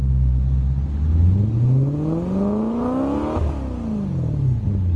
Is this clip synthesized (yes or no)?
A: no